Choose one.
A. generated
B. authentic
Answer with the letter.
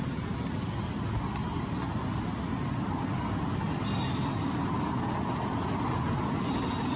B